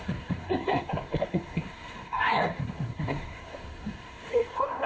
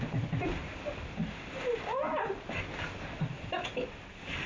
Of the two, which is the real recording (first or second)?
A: second